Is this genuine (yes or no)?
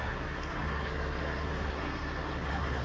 no